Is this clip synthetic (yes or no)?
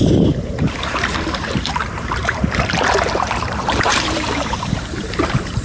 yes